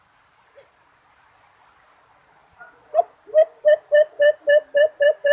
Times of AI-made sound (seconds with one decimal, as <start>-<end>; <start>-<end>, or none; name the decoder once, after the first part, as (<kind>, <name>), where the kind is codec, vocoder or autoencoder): none

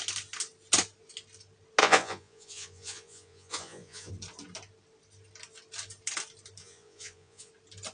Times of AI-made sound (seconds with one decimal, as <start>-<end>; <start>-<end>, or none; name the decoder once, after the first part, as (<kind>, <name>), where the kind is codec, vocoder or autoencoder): 1.8-4.1 (vocoder, Vocos); 6.6-7.5

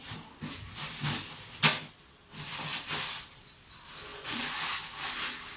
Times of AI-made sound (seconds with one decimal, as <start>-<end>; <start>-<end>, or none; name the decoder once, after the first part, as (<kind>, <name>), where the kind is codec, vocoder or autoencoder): 4.1-4.6 (vocoder, Vocos)

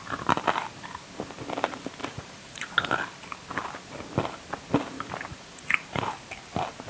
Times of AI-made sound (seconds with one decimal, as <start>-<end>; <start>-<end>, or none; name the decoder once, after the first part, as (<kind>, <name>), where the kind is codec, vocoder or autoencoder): 2.0-2.7 (vocoder, Vocos); 5.3-6.0

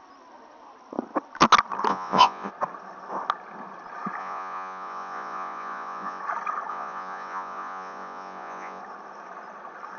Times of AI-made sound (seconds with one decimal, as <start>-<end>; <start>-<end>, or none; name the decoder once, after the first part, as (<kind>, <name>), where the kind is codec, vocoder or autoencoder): 1.9-2.5 (vocoder, Vocos); 4.2-6.2; 6.7-8.8

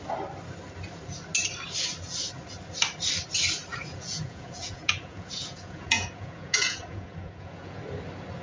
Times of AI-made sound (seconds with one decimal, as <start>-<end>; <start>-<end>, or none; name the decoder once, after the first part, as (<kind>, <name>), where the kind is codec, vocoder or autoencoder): 3.7-7.8 (vocoder, Vocos)

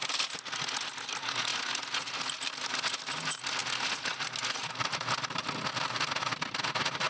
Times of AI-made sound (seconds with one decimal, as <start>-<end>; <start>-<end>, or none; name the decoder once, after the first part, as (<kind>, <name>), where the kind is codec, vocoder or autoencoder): none